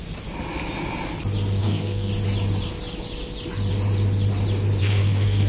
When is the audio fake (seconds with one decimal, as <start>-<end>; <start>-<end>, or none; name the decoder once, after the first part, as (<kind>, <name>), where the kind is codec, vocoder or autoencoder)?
1.6-2.1 (codec, SNAC); 4.8-5.5